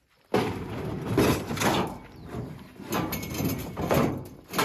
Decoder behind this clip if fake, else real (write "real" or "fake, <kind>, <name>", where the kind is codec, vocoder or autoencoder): real